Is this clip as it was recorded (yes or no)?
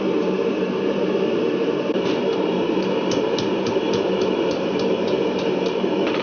no